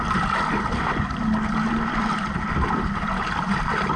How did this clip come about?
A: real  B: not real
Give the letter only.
A